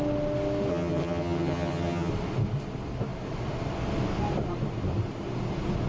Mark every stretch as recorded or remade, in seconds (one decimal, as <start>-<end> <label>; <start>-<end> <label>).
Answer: 0.0-0.7 recorded; 0.7-2.1 remade; 2.1-5.9 recorded